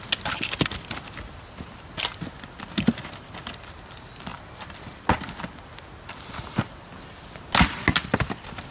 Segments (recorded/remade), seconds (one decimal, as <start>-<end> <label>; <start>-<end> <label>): 0.0-8.7 recorded